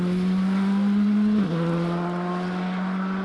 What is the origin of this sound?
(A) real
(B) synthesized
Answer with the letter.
A